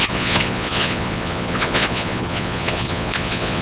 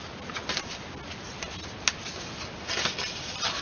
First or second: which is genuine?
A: second